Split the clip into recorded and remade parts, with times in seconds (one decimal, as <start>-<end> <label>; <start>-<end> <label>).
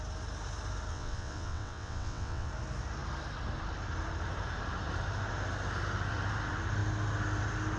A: 0.0-0.9 recorded; 0.9-2.5 remade; 2.5-7.8 recorded